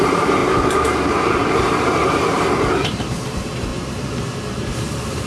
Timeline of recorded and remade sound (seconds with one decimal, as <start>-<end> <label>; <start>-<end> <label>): 0.0-3.7 remade; 3.7-4.6 recorded; 4.6-5.3 remade